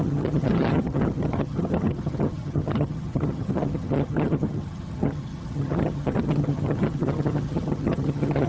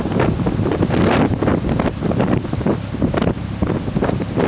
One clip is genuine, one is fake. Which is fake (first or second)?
first